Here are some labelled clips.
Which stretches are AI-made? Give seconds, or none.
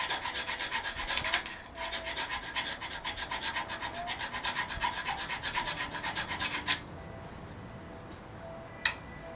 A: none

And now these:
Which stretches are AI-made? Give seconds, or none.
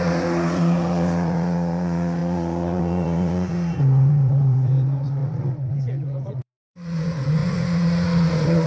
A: 0.0-8.7 (vocoder, Vocos)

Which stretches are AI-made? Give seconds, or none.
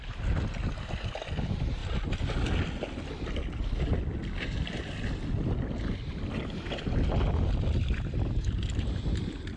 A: none